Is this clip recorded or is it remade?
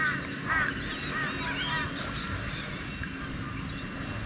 recorded